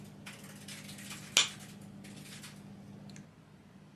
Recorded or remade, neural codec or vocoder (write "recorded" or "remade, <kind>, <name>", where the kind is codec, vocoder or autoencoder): recorded